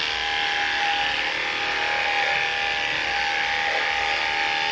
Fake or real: real